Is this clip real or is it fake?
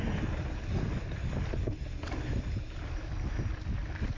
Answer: real